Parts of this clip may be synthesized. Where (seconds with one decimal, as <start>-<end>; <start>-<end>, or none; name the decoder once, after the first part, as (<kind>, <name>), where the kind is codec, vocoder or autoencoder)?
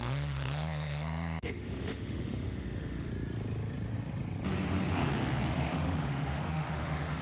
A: 0.0-3.1 (autoencoder, DAC-VAE); 5.5-7.2